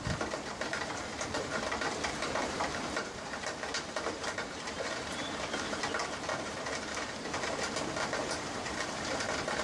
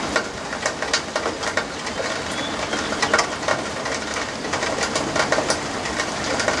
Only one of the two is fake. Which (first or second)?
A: first